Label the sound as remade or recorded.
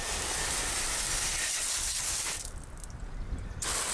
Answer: recorded